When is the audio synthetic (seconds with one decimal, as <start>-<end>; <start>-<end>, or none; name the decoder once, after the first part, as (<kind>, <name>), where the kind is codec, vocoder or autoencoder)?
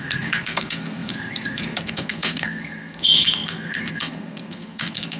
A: 0.0-5.2 (codec, SNAC)